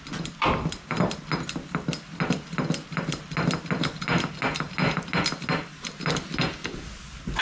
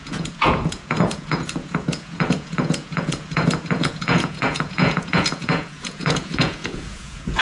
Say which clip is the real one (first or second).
first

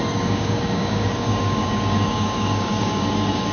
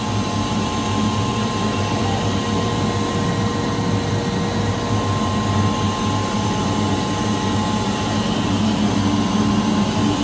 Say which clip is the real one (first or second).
second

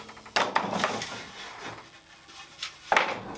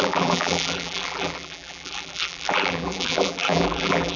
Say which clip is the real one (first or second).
first